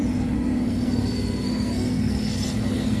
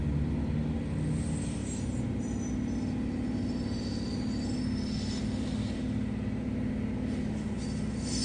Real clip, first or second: second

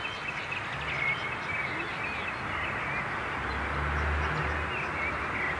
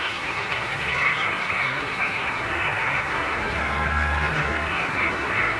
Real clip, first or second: first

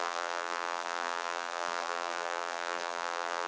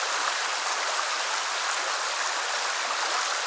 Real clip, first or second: second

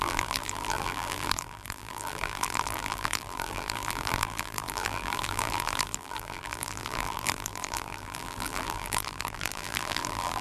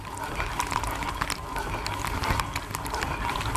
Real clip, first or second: second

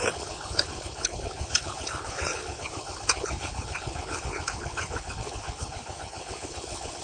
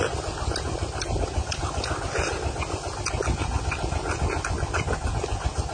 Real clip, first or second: second